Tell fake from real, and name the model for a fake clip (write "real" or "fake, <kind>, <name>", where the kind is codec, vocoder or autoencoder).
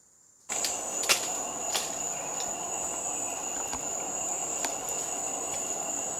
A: real